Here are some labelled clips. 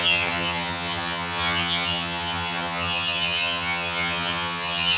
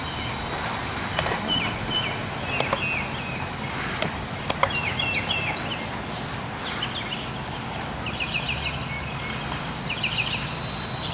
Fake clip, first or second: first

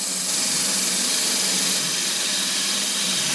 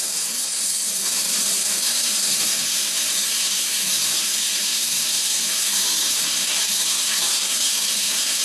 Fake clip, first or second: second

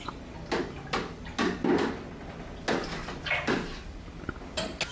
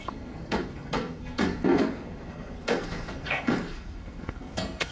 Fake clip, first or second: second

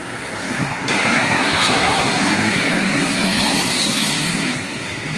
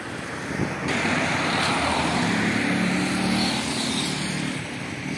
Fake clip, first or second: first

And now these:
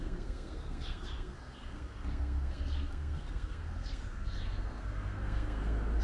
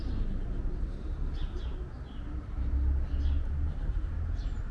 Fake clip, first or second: first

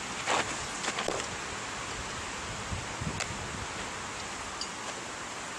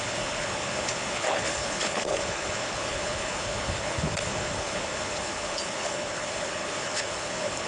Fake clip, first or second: second